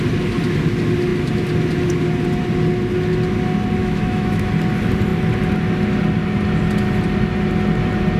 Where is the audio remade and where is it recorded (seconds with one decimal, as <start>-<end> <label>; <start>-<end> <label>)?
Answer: 0.0-3.8 recorded; 3.8-4.5 remade; 4.5-8.2 recorded